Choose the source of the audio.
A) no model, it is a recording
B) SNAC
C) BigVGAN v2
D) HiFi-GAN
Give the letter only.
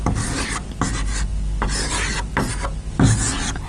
A